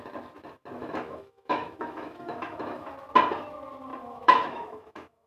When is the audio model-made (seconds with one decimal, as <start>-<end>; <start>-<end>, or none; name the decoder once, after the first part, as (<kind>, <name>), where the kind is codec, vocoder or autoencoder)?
0.8-2.9 (autoencoder, DAC-VAE); 3.9-5.3